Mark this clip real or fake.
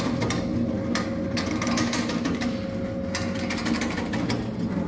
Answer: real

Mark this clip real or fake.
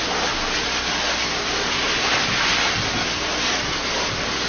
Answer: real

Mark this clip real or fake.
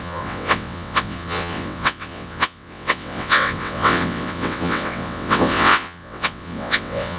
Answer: fake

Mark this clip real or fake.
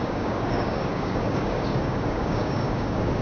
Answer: fake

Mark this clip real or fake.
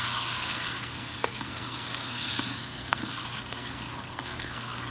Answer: fake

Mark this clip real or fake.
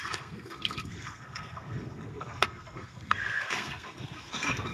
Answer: fake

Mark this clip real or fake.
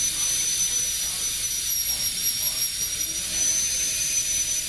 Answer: fake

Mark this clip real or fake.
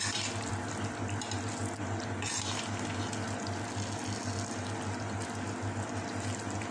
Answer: real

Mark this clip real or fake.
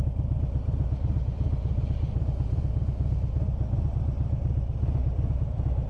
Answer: real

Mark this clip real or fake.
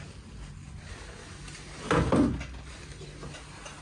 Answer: real